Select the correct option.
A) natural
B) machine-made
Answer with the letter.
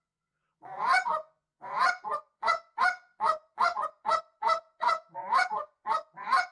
B